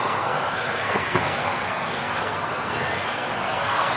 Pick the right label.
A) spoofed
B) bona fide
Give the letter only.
A